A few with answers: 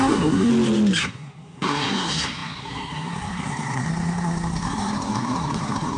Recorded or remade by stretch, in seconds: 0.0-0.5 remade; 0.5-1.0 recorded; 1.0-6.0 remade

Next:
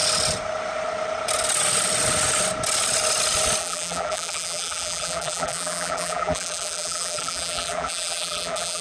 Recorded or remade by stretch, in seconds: 0.0-3.6 recorded; 3.6-8.8 remade

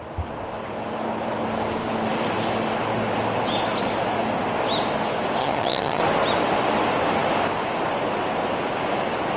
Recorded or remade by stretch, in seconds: 0.0-5.4 recorded; 5.4-6.0 remade; 6.0-9.4 recorded